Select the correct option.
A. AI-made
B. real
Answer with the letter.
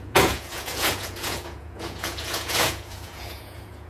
A